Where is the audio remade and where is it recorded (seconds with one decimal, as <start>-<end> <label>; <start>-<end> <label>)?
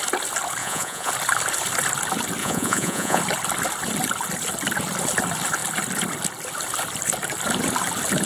0.0-0.6 recorded; 0.6-1.1 remade; 1.1-2.4 recorded; 2.4-3.2 remade; 3.2-8.3 recorded